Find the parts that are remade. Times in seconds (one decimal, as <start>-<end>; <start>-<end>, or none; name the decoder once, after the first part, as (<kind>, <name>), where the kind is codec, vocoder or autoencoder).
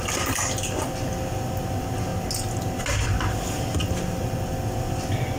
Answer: none